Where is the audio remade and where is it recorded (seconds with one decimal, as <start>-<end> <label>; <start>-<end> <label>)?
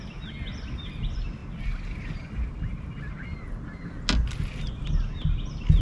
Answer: 0.0-5.8 recorded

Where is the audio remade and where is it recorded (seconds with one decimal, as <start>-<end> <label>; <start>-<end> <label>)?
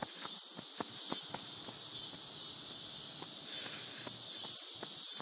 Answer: 0.0-5.2 recorded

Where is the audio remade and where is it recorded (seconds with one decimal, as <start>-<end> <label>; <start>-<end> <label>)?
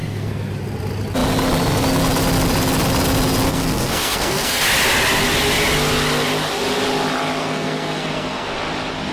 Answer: 0.0-0.5 remade; 0.5-3.5 recorded; 3.5-4.6 remade; 4.6-7.4 recorded; 7.4-8.5 remade; 8.5-9.1 recorded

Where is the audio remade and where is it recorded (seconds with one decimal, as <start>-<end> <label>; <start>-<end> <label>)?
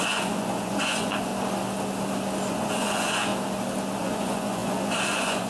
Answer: 0.0-1.3 remade; 1.3-2.5 recorded; 2.5-3.3 remade; 3.3-4.0 recorded; 4.0-5.5 remade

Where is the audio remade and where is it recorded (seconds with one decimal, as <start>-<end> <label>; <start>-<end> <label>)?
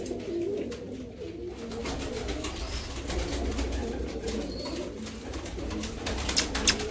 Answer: 0.0-6.9 recorded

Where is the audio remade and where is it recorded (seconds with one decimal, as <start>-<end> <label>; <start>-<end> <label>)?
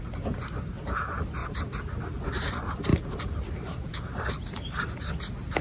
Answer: 0.0-1.4 recorded; 1.4-2.0 remade; 2.0-2.9 recorded; 2.9-4.4 remade; 4.4-5.6 recorded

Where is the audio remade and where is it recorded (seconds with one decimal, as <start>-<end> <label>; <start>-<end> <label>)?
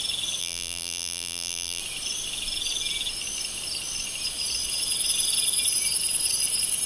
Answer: 0.0-0.4 recorded; 0.4-1.8 remade; 1.8-6.9 recorded